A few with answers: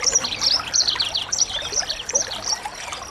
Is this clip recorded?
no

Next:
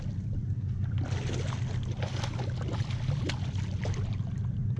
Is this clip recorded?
yes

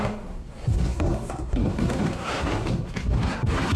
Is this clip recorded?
no